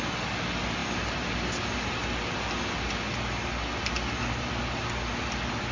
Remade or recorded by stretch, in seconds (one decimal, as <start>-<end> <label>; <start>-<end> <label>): 0.0-5.7 recorded